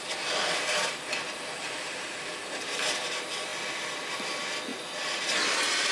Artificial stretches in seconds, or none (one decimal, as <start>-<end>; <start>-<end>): 0.0-4.7; 5.2-5.9